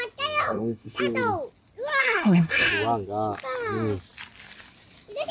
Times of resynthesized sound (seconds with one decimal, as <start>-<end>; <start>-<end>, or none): 0.4-1.0; 2.0-2.7